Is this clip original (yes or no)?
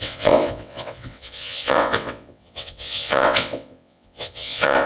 no